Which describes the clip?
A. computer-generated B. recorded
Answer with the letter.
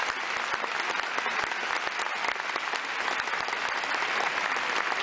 B